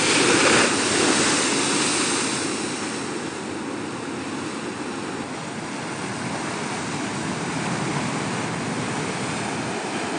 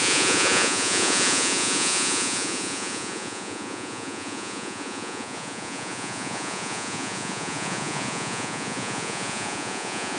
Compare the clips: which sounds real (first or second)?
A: first